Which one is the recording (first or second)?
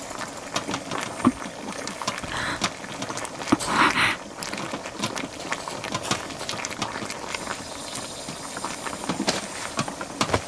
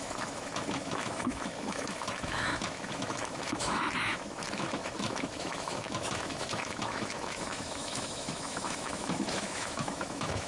first